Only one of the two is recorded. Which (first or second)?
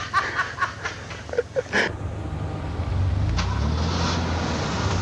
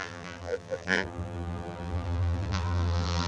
first